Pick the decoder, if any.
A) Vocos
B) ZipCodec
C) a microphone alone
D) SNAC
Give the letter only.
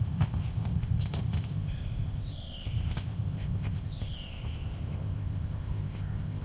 B